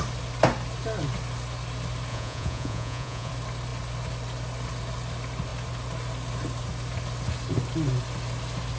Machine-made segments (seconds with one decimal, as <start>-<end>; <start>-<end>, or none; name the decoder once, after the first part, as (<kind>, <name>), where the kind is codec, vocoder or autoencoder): 2.1-3.3 (vocoder, Vocos)